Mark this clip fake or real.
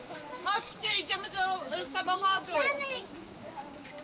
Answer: fake